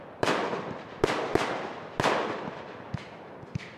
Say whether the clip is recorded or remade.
remade